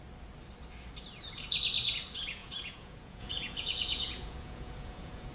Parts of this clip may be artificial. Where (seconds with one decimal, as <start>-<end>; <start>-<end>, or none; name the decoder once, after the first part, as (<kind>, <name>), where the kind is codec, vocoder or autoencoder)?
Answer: 2.4-5.3 (vocoder, Vocos)